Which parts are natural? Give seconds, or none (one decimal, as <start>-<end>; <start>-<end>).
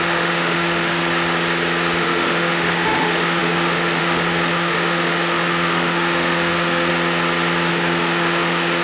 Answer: 1.0-2.0; 6.9-7.7